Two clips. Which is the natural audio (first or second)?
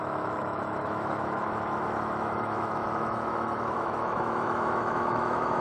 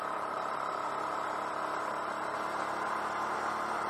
second